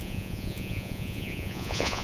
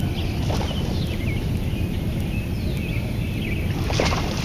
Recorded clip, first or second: second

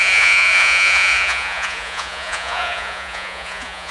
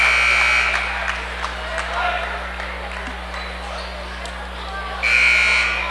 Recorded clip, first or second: second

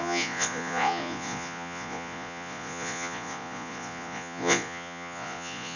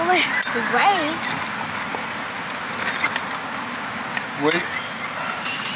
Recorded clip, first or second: second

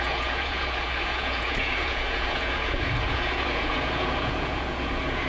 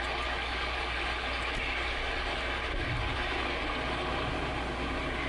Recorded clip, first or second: second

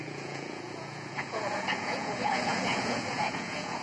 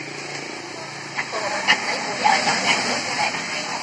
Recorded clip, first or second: second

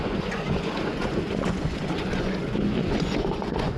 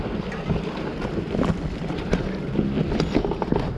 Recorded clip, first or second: second